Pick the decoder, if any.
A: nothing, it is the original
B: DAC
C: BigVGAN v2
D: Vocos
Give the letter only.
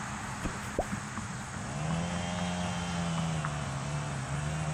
A